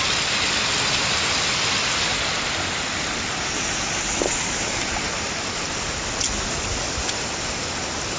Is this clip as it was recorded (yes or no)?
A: yes